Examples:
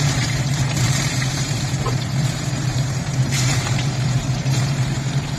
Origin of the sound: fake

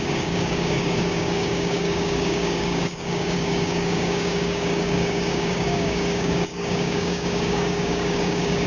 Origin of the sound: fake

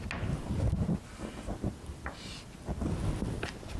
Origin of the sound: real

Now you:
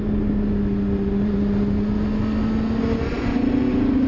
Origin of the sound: real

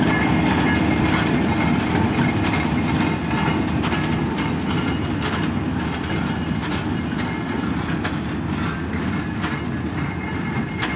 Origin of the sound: real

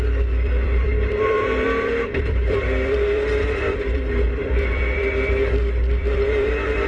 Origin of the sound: fake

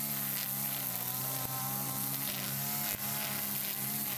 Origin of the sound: real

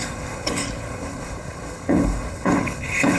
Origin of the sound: fake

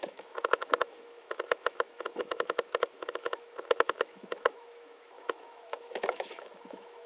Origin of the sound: fake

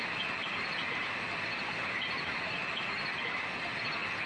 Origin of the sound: real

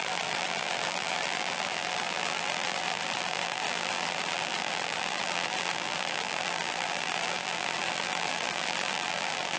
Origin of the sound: fake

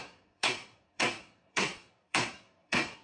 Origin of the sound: fake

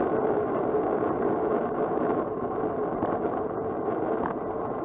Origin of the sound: real